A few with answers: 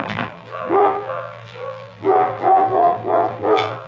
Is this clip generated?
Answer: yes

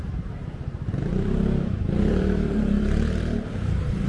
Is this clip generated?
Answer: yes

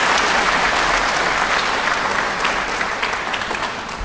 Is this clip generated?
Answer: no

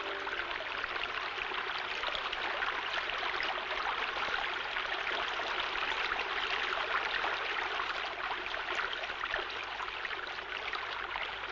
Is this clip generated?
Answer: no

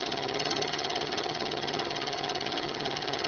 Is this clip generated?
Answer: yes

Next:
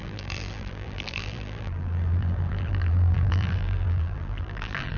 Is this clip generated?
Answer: yes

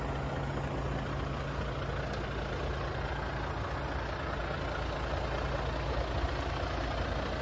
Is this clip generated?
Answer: no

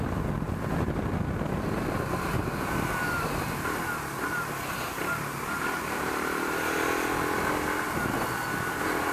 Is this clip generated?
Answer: no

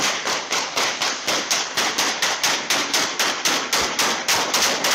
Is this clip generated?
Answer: no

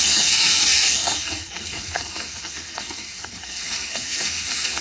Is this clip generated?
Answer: yes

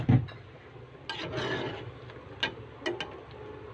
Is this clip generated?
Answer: no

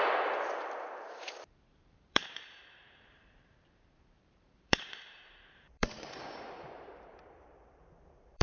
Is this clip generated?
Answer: yes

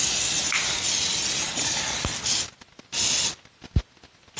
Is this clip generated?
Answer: no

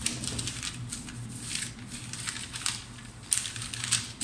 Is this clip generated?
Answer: no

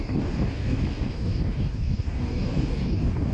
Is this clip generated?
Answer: yes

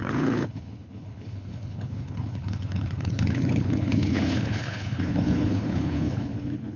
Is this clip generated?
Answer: yes